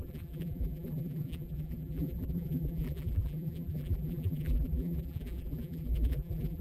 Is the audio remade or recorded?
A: remade